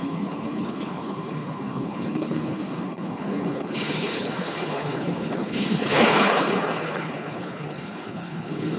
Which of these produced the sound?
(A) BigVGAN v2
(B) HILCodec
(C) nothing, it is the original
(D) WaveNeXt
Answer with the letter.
B